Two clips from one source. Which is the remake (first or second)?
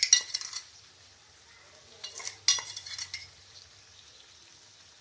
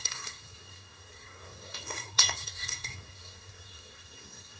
second